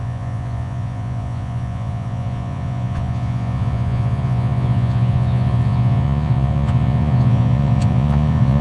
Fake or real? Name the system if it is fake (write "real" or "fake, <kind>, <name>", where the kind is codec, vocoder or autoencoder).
fake, vocoder, Vocos